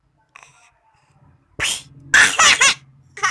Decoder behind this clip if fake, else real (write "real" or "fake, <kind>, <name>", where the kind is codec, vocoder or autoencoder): real